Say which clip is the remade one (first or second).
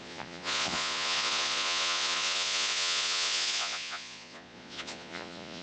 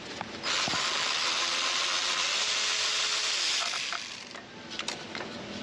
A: first